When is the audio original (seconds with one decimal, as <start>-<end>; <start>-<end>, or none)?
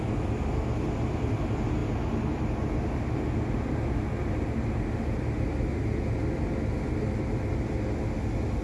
0.0-8.6